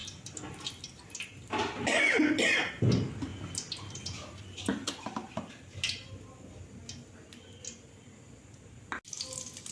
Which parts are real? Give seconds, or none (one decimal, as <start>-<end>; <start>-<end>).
0.0-9.7